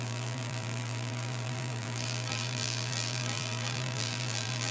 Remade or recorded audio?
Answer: remade